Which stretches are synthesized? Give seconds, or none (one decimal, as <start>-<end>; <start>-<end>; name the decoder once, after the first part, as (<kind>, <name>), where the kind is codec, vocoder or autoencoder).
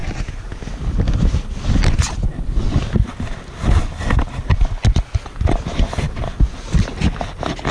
none